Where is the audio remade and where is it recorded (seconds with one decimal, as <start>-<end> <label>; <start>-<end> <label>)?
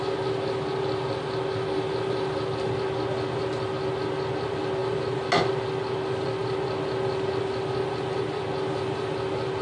0.0-9.6 recorded